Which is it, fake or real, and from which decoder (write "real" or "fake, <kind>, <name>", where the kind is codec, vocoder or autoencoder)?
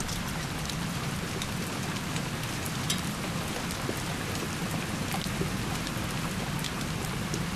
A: real